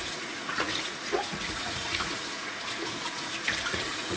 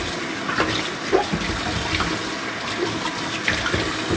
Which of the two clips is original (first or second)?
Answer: second